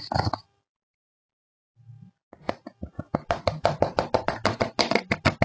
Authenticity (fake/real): real